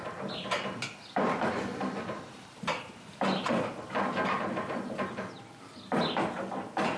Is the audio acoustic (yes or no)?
yes